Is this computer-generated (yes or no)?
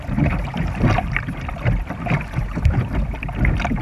yes